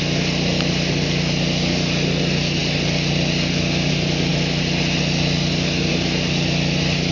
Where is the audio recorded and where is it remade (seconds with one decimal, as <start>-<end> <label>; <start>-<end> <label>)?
0.0-7.1 recorded